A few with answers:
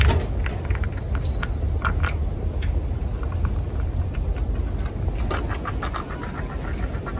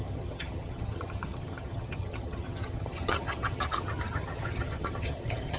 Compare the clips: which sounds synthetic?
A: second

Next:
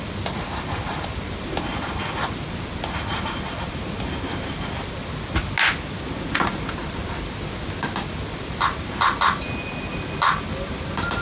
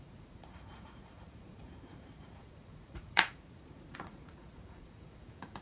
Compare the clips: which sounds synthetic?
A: second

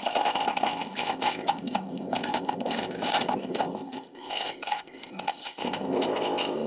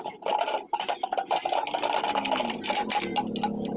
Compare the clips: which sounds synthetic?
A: first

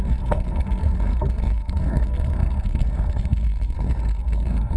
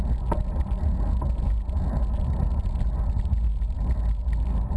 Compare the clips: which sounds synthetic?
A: first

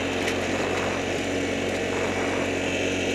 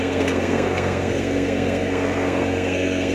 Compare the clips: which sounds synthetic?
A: second